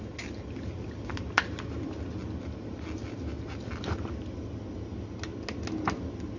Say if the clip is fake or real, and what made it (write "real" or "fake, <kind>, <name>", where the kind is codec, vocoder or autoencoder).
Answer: real